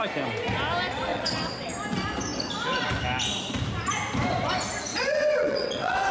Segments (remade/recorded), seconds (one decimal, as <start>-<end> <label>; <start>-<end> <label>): 0.0-1.1 recorded; 1.1-1.7 remade; 1.7-4.9 recorded; 4.9-6.1 remade